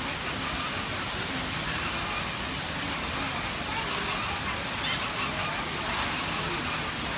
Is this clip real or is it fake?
real